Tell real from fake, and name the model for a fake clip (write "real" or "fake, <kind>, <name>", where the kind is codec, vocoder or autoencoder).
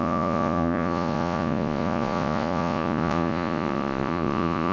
fake, vocoder, Vocos